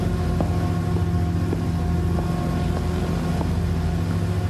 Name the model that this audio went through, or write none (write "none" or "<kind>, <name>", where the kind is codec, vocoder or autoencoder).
none